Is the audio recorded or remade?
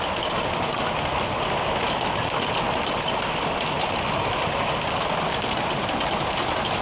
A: recorded